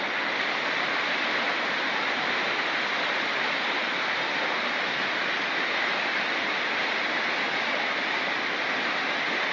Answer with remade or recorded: recorded